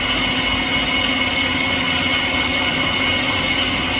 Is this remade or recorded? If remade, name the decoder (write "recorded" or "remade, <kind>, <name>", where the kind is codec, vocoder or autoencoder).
recorded